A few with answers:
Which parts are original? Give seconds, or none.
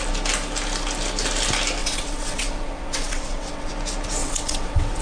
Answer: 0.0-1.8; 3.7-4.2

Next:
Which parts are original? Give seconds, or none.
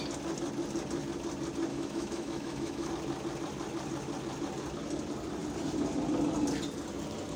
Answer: 0.0-1.7; 2.9-7.4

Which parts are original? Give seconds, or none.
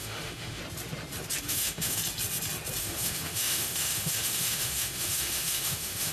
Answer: 0.6-1.4; 2.0-2.8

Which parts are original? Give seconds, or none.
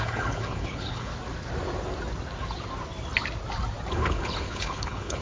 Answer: 1.1-3.9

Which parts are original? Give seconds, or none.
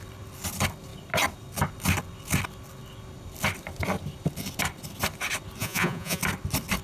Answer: 0.0-5.6; 6.2-6.8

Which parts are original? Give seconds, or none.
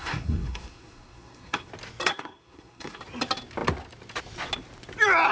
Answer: 1.7-2.1; 3.0-5.3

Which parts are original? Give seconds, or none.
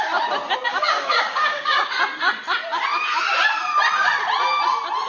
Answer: 0.0-0.7; 2.0-5.1